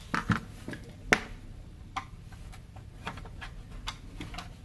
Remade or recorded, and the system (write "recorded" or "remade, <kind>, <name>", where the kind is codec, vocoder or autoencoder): recorded